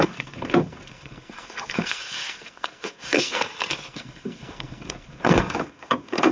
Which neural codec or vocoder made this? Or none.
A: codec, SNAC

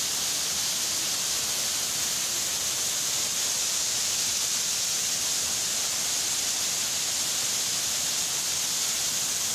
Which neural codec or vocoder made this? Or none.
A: none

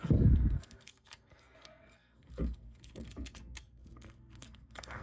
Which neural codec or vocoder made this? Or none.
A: codec, SNAC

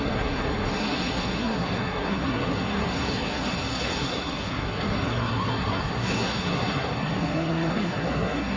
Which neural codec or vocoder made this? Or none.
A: codec, SNAC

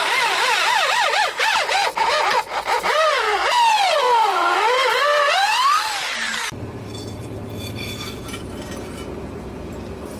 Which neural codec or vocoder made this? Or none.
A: none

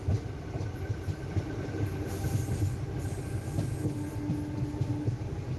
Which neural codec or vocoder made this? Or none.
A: none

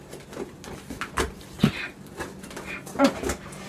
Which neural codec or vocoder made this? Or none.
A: none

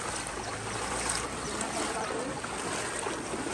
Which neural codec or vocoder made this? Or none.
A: none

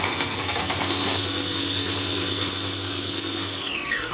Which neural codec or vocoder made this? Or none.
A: codec, SNAC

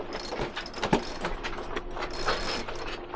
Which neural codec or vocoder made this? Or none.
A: none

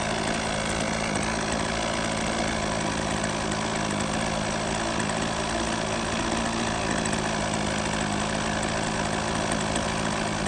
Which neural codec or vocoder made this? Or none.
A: none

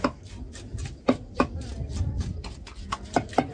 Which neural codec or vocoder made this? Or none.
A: none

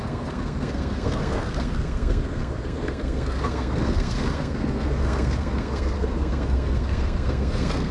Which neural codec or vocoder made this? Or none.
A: codec, SNAC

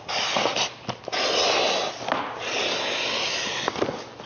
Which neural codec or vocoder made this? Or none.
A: none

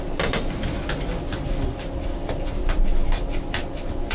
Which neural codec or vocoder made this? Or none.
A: none